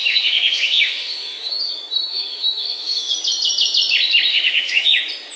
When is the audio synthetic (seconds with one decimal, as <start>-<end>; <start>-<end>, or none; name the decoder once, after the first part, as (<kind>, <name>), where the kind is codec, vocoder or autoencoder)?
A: 0.0-1.5 (autoencoder, DAC-VAE); 2.1-3.1; 4.3-5.0